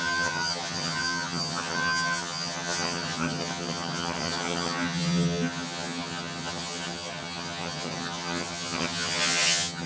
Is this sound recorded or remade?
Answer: remade